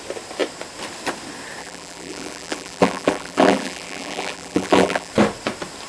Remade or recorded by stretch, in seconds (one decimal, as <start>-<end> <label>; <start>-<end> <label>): 0.0-1.6 recorded; 1.6-5.1 remade; 5.1-5.9 recorded